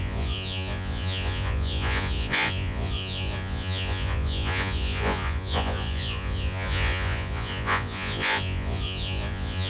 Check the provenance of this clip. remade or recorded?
remade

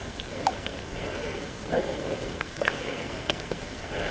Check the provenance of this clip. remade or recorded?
remade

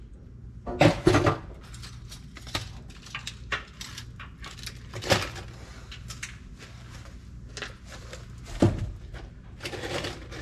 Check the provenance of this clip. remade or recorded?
recorded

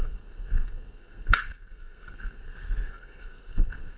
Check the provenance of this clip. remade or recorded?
remade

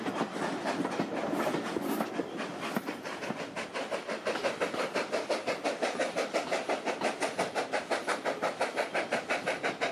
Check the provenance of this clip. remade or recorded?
recorded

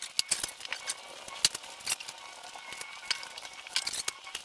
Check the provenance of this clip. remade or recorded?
recorded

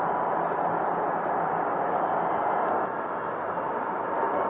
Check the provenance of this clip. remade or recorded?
recorded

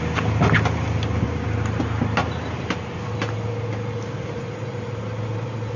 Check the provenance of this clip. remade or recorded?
recorded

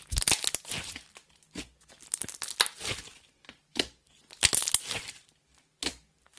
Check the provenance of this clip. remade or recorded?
recorded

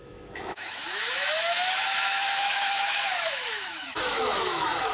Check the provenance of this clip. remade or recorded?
remade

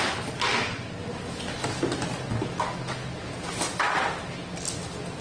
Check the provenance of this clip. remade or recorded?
recorded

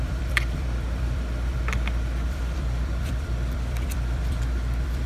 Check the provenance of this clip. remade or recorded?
remade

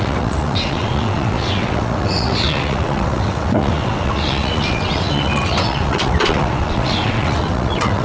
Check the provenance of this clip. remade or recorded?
remade